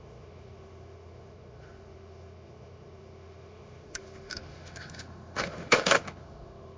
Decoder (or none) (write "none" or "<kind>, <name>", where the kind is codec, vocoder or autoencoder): autoencoder, DAC-VAE